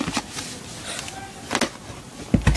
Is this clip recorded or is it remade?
recorded